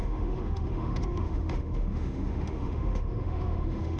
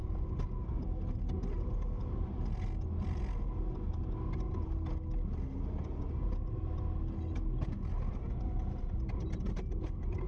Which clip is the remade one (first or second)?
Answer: first